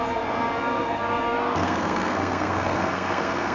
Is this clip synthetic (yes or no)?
yes